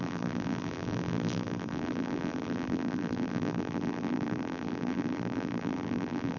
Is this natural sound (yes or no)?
no